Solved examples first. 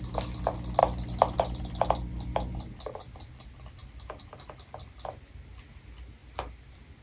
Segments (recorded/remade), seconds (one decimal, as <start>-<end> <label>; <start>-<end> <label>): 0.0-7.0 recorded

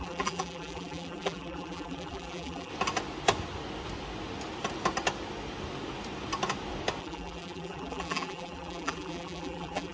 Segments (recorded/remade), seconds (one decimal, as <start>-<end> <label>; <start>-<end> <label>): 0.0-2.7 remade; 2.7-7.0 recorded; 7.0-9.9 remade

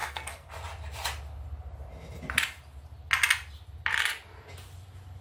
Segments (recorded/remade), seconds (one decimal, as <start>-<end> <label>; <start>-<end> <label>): 0.0-0.5 remade; 0.5-5.2 recorded

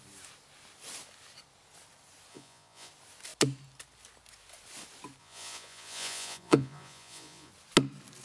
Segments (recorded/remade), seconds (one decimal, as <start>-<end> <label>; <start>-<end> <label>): 0.0-2.3 recorded; 2.3-2.9 remade; 2.9-5.2 recorded; 5.2-7.5 remade; 7.5-8.2 recorded

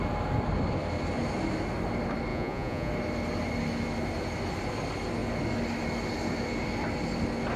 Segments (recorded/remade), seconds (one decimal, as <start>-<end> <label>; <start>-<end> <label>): 0.0-2.3 recorded; 2.3-2.9 remade; 2.9-7.6 recorded

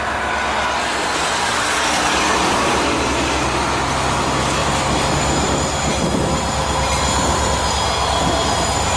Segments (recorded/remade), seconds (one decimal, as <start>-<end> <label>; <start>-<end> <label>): 0.0-4.6 recorded; 4.6-5.6 remade; 5.6-9.0 recorded

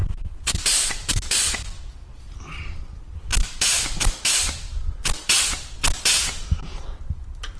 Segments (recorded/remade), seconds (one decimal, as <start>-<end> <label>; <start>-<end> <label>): 0.0-1.4 remade; 1.4-3.3 recorded; 3.3-5.1 remade; 5.1-6.7 recorded; 6.7-7.6 remade

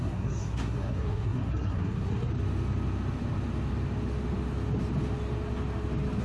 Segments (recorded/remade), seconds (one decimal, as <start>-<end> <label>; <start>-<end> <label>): 0.0-2.3 remade; 2.3-6.2 recorded